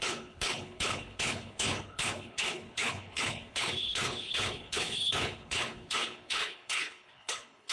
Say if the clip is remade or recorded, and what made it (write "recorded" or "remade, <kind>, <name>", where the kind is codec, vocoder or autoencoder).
remade, codec, HILCodec